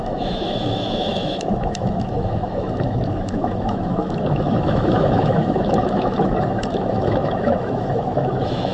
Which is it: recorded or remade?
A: remade